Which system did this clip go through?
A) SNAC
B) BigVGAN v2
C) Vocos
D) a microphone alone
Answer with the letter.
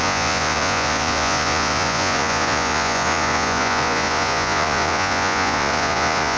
C